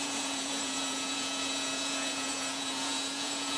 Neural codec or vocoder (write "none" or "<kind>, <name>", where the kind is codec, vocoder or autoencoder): vocoder, Vocos